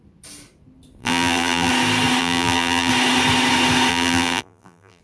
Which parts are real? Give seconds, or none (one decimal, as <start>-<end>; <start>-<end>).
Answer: 0.0-1.0; 1.7-2.2; 2.9-3.9

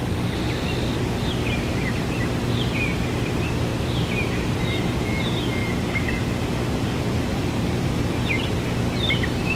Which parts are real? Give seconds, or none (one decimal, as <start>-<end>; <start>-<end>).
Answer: 0.0-7.3; 8.0-9.6

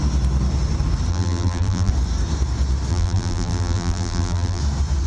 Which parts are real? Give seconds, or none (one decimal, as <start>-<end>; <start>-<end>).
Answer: 0.0-1.1; 1.9-2.9; 4.6-5.1

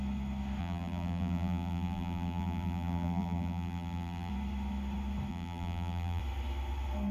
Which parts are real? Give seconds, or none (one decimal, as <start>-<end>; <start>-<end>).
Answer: 0.0-0.6; 4.3-5.3; 6.2-7.1